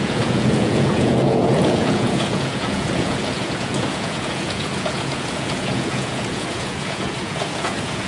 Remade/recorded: remade